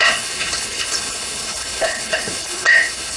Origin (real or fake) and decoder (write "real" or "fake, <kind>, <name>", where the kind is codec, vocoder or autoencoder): fake, codec, HILCodec